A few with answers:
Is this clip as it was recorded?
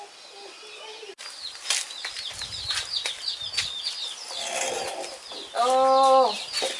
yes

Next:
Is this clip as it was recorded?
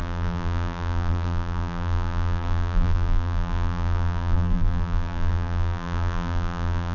no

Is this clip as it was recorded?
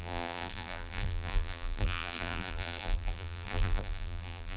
no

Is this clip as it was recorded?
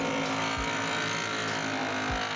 yes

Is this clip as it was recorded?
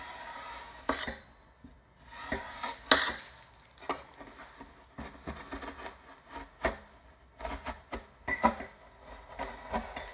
yes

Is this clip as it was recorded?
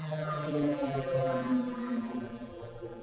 no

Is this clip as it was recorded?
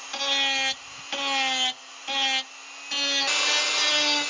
yes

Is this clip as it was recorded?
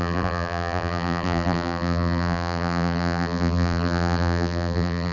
no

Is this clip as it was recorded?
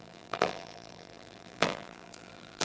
no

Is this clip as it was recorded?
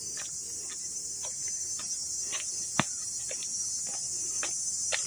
yes